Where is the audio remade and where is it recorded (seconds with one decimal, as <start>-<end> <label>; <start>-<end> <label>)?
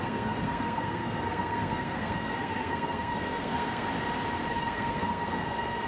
0.0-3.9 remade; 3.9-4.5 recorded; 4.5-5.9 remade